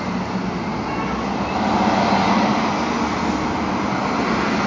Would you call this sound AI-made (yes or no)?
no